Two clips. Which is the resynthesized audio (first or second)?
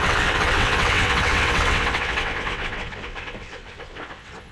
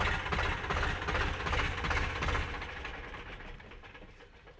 first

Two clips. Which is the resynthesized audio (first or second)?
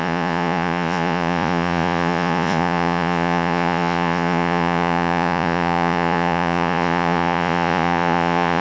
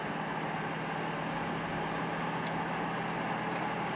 first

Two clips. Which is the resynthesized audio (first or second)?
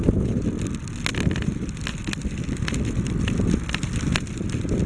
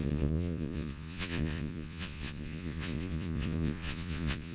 second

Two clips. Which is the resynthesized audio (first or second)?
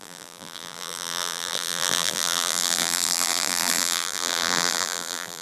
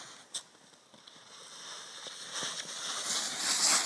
first